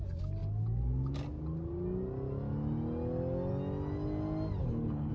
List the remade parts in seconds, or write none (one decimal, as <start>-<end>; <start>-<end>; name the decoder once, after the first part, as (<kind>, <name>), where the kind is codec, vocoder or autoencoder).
4.6-5.1 (codec, HILCodec)